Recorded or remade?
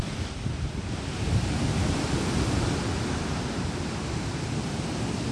remade